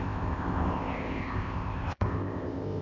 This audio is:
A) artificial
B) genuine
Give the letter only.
A